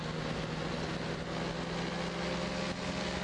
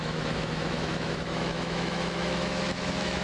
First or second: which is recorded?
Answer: first